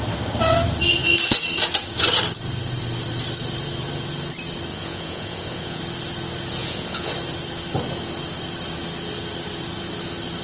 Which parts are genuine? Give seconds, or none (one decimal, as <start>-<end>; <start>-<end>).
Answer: 0.0-4.7; 5.8-6.6; 7.1-10.4